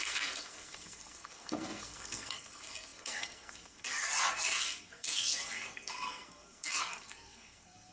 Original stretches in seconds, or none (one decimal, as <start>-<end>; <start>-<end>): none